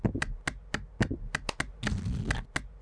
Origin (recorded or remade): recorded